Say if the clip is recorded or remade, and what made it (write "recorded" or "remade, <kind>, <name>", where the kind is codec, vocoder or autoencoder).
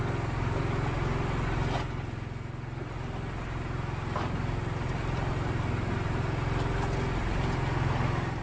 recorded